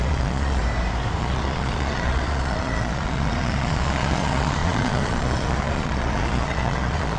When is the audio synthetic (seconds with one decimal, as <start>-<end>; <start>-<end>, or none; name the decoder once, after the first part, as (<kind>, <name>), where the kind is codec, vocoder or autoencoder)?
0.0-0.6 (vocoder, Vocos); 1.2-7.2